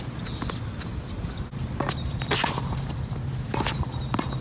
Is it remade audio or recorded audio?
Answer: recorded